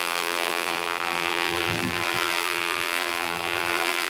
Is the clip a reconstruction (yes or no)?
yes